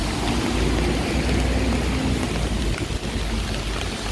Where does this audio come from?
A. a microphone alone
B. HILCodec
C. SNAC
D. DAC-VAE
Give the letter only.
A